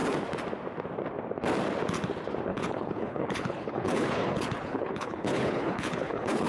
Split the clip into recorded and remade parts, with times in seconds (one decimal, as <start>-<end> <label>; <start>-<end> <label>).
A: 0.0-2.5 recorded; 2.5-6.5 remade